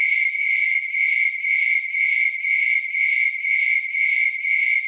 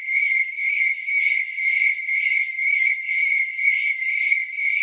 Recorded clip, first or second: first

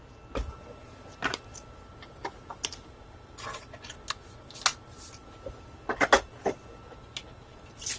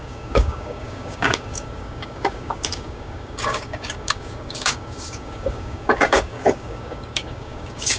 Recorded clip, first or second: first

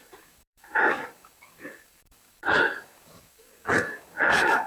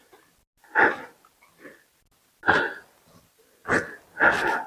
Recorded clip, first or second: second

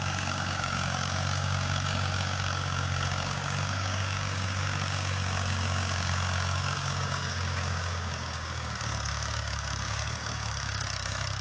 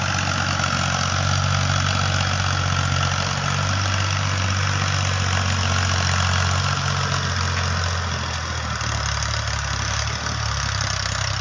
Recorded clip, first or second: second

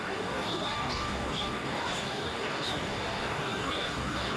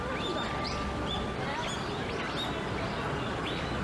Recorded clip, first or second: second